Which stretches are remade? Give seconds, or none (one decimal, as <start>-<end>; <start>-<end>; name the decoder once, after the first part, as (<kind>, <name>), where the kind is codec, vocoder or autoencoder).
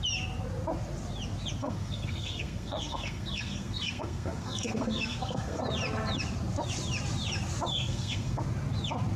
1.6-5.6 (codec, SNAC); 7.7-8.4